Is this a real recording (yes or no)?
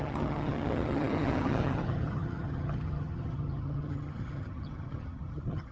no